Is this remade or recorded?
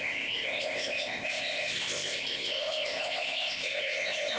remade